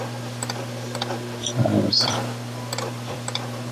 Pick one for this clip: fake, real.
fake